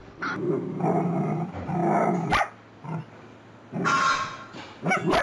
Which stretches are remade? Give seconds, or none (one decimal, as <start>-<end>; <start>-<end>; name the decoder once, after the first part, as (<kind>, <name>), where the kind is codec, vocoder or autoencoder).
1.2-1.8 (vocoder, BigVGAN v2)

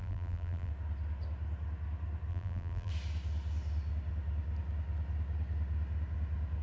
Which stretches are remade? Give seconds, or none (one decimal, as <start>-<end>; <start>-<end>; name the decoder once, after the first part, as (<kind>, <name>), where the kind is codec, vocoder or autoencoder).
0.0-0.7 (vocoder, BigVGAN v2); 2.3-2.9